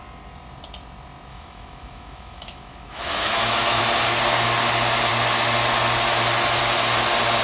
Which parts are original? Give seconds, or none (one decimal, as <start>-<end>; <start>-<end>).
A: 0.0-1.3; 3.8-7.4